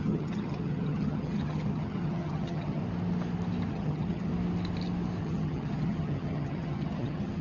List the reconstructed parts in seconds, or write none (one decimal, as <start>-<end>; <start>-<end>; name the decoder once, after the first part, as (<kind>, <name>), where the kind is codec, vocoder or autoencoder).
0.0-2.8 (vocoder, HiFi-GAN); 3.7-4.3; 5.2-7.4